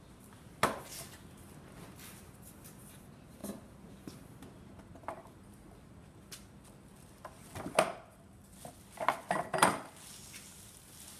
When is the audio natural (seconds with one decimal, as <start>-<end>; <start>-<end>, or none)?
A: 0.0-11.2